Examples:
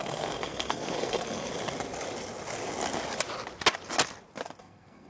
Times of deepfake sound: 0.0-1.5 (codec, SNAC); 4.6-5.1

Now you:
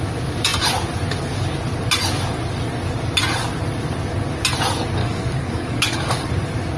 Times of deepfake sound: 5.0-6.3 (codec, DAC)

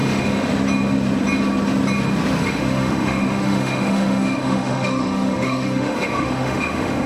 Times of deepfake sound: 0.0-0.5 (autoencoder, DAC-VAE); 2.4-7.1

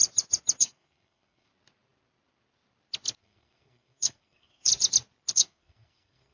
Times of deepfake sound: 0.6-1.5 (codec, SNAC); 3.2-4.7; 5.3-6.3

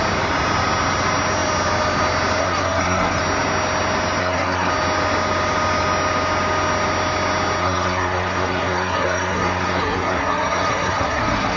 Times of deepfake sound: 2.4-3.2 (codec, SNAC); 4.2-4.7; 7.6-11.6

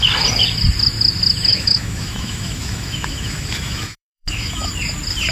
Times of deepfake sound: 1.5-4.7 (autoencoder, DAC-VAE)

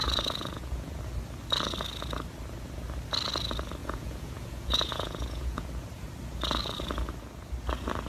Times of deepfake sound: 0.0-1.0 (vocoder, Vocos); 3.8-5.7